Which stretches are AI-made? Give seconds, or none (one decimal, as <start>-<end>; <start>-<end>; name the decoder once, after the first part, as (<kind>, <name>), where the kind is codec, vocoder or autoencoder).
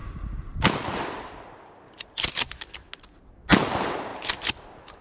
none